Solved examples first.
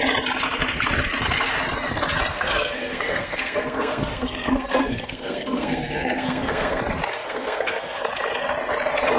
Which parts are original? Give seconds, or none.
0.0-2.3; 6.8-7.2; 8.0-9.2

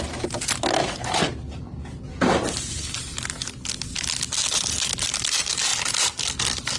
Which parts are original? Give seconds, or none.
0.0-6.8